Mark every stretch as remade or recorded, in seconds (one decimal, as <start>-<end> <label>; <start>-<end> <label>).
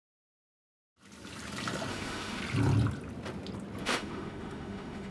0.0-1.9 recorded; 1.9-2.4 remade; 2.4-3.8 recorded; 3.8-5.1 remade